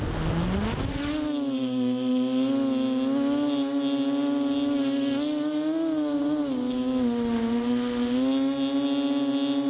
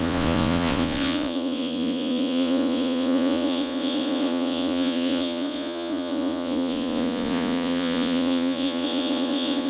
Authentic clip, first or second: first